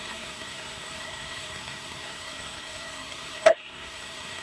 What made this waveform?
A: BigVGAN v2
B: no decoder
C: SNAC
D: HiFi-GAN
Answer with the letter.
C